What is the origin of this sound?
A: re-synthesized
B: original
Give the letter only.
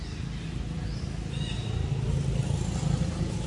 B